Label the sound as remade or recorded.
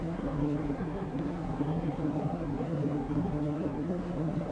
remade